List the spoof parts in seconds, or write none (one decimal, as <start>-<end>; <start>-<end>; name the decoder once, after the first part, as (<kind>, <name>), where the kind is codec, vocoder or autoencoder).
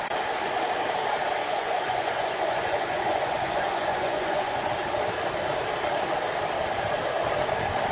1.4-4.7 (vocoder, Vocos)